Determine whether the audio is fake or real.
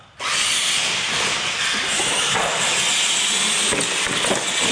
real